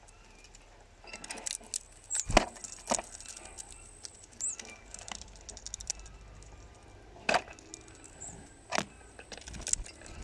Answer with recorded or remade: recorded